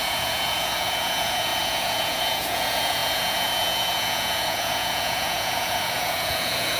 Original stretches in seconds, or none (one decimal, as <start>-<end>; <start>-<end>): none

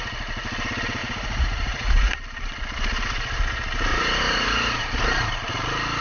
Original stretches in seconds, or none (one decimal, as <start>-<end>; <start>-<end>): 0.0-1.0; 2.1-3.9; 4.9-6.0

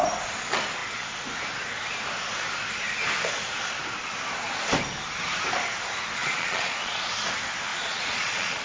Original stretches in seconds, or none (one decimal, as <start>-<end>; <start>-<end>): 0.0-6.2; 7.1-7.7

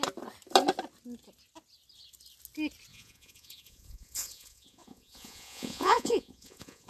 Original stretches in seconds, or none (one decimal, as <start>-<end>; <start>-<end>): 0.0-2.9